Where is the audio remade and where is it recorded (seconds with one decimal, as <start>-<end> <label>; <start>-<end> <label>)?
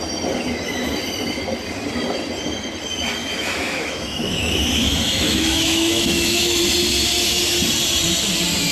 0.0-3.2 recorded; 3.2-6.6 remade; 6.6-8.7 recorded